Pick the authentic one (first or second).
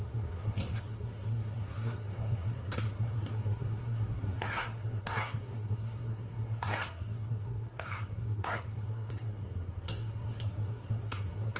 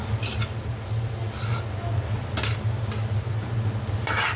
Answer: second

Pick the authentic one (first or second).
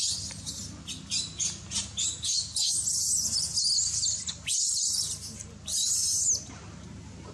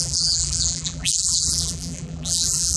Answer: first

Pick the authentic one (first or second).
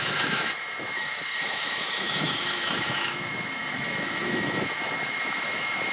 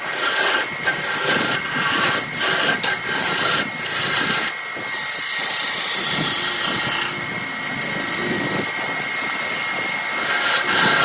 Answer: second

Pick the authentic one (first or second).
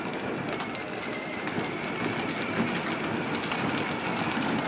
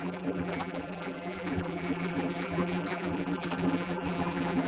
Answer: first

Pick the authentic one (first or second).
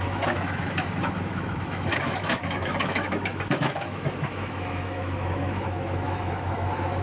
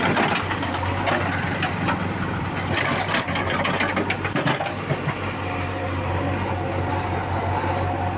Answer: second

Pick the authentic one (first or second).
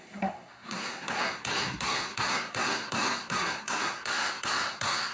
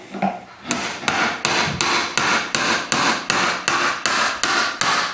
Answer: second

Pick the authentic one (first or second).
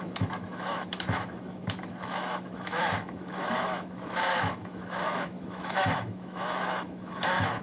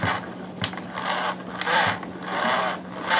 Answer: second